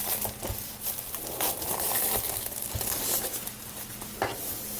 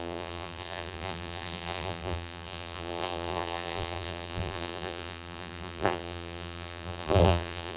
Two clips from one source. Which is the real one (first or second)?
first